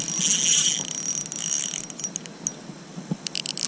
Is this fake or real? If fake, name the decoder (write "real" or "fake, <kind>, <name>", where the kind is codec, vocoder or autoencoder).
real